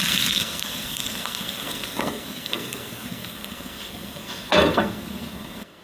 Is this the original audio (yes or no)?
no